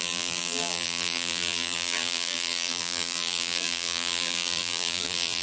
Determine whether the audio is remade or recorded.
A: remade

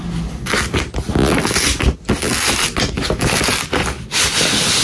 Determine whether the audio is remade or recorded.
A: recorded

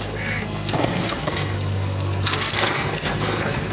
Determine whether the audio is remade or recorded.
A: remade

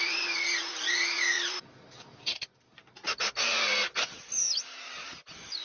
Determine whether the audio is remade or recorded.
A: remade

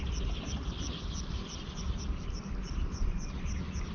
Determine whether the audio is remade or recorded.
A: recorded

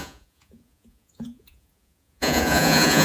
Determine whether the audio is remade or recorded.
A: remade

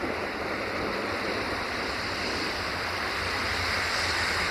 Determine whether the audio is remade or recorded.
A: remade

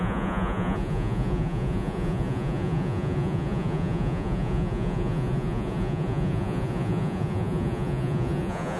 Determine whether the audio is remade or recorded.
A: remade